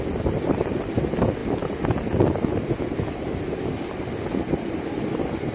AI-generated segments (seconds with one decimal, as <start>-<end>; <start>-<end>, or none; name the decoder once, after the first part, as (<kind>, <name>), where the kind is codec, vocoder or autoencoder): none